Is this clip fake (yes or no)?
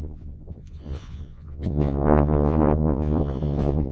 yes